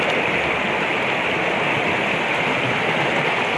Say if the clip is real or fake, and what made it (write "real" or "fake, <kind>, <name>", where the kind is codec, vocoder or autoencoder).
real